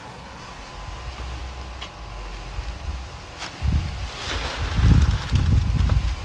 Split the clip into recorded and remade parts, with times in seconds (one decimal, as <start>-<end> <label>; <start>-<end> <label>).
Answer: 0.0-0.7 remade; 0.7-6.2 recorded